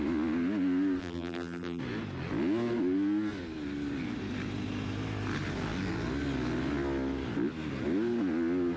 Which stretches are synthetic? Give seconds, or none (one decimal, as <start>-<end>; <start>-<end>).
1.0-1.8